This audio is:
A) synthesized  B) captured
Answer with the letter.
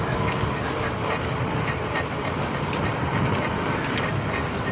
B